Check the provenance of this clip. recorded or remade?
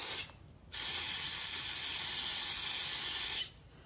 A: recorded